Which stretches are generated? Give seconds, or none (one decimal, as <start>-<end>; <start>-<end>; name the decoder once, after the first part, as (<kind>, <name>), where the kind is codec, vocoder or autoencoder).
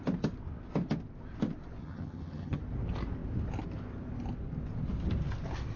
1.8-2.6 (vocoder, HiFi-GAN)